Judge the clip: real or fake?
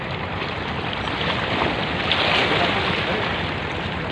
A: real